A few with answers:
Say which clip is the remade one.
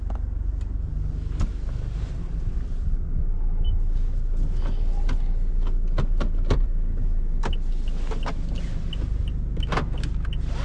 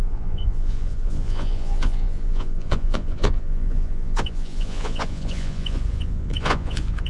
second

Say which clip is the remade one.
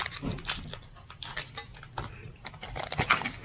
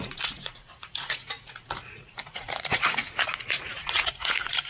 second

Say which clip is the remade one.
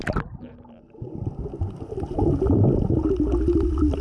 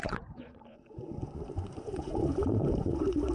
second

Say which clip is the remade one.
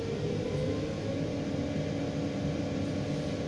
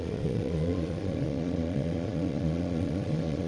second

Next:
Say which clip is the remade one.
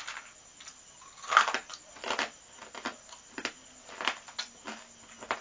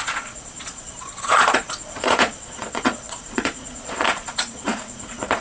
second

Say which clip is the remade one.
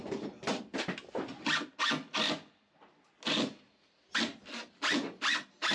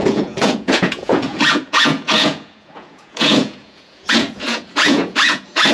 second